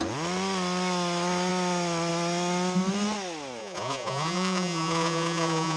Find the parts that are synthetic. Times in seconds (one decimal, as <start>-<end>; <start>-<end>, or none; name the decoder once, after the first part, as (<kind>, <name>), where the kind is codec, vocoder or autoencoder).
3.6-5.8 (vocoder, Vocos)